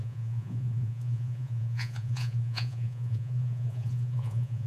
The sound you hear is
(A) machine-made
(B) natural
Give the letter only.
A